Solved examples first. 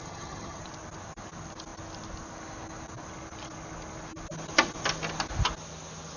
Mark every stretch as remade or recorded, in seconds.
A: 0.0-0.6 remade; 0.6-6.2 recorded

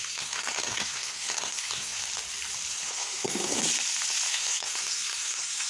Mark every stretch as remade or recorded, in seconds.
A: 0.0-2.0 remade; 2.0-2.7 recorded; 2.7-3.6 remade; 3.6-4.3 recorded; 4.3-5.7 remade

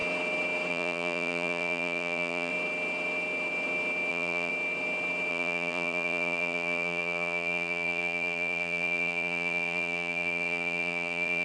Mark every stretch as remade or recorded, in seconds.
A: 0.0-0.7 recorded; 0.7-2.5 remade; 2.5-4.1 recorded; 4.1-4.5 remade; 4.5-5.3 recorded; 5.3-11.4 remade

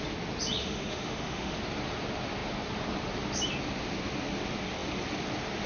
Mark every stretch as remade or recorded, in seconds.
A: 0.0-0.6 recorded; 0.6-1.6 remade; 1.6-5.7 recorded

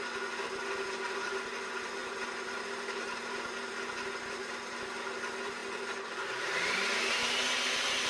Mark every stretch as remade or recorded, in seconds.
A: 0.0-8.1 recorded

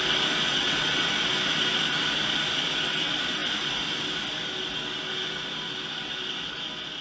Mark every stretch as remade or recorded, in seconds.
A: 0.0-0.5 recorded; 0.5-1.1 remade; 1.1-7.0 recorded

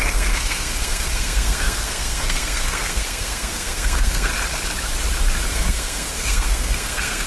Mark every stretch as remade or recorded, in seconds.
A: 0.0-4.3 remade; 4.3-5.5 recorded; 5.5-7.3 remade

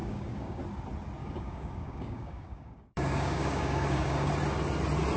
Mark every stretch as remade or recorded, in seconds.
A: 0.0-0.6 remade; 0.6-1.2 recorded; 1.2-4.3 remade; 4.3-5.2 recorded